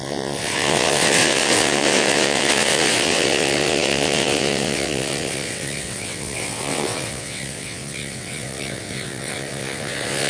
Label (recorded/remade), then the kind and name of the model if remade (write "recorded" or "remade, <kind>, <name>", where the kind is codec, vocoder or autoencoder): remade, vocoder, WaveNeXt